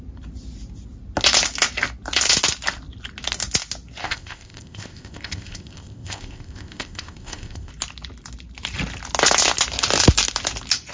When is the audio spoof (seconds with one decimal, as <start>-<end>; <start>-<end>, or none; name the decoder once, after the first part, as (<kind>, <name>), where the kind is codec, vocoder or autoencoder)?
4.0-7.7 (codec, ZipCodec)